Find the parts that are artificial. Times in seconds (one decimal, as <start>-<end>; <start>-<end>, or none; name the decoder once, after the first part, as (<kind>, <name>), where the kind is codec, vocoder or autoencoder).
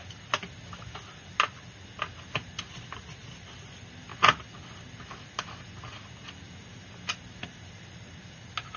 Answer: none